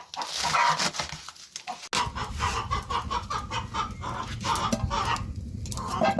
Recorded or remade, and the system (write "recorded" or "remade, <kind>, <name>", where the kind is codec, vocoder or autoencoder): recorded